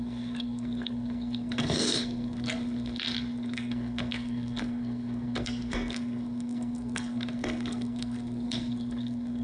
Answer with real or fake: fake